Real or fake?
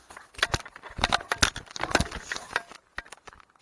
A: real